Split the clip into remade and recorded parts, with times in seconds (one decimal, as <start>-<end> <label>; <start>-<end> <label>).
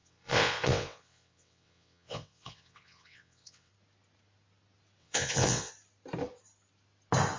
0.0-3.7 remade; 3.7-5.0 recorded; 5.0-5.7 remade; 5.7-7.4 recorded